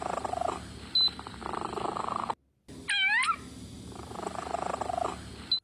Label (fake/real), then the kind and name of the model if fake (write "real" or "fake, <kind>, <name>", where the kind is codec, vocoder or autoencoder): real